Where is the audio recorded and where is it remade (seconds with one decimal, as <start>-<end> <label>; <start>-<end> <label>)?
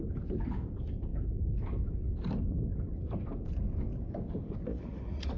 0.0-4.7 recorded; 4.7-5.4 remade